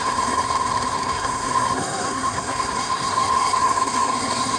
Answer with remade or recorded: remade